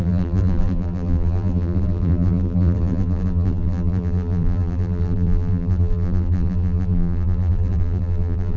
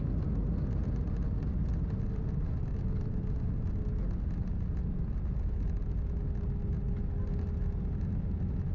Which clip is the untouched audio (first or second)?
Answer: second